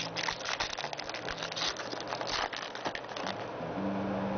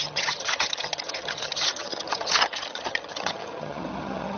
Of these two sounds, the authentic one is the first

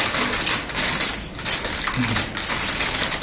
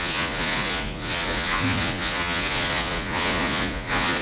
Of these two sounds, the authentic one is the first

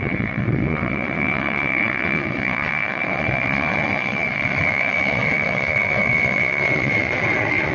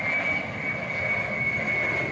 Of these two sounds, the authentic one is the second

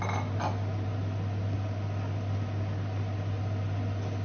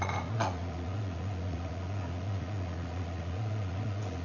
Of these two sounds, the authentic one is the first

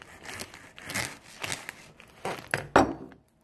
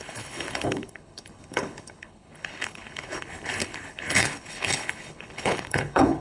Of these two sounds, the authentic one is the first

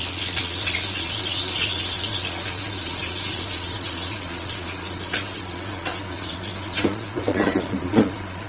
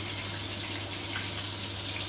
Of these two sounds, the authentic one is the second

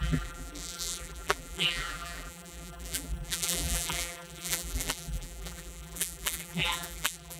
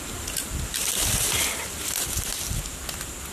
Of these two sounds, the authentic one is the second